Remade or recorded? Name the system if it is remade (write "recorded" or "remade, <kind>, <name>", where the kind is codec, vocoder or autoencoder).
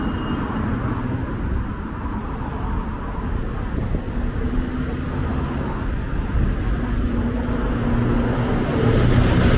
recorded